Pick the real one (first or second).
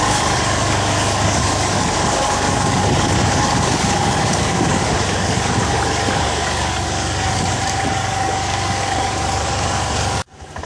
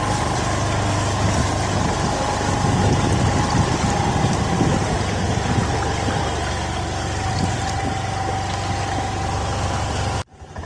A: second